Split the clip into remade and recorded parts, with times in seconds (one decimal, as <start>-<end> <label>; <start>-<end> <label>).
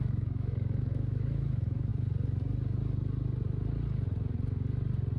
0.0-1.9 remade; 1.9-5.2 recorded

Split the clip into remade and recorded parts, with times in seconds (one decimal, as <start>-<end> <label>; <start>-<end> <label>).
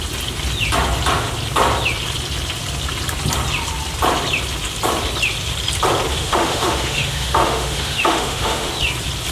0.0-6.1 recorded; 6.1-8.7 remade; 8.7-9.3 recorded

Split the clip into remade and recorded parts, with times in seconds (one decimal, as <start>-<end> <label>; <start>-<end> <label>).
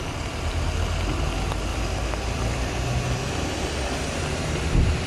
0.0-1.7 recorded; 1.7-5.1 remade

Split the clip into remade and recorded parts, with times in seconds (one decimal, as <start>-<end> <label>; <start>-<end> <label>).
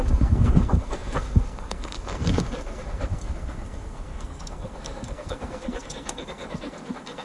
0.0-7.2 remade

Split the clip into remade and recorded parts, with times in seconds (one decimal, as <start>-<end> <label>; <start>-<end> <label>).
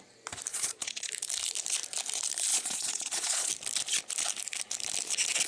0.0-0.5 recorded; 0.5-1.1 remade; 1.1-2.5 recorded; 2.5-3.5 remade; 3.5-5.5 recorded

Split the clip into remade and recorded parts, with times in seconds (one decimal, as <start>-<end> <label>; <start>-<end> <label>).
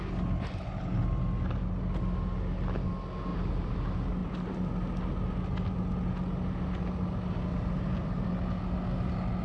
0.0-3.3 recorded; 3.3-3.8 remade; 3.8-4.2 recorded; 4.2-4.7 remade; 4.7-7.5 recorded; 7.5-8.3 remade; 8.3-9.4 recorded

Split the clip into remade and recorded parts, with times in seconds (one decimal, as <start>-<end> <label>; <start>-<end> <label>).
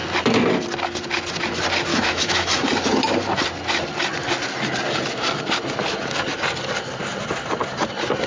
0.0-1.9 recorded; 1.9-2.5 remade; 2.5-8.3 recorded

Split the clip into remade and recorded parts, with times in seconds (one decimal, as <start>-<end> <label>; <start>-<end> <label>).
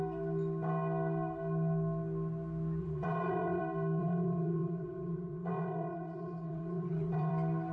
0.0-2.8 recorded; 2.8-3.6 remade; 3.6-4.0 recorded; 4.0-7.3 remade; 7.3-7.7 recorded